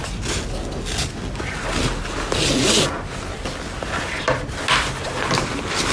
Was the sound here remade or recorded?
recorded